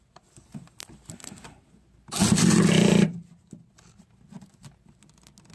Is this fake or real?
real